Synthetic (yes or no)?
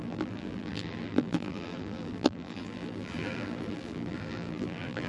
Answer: yes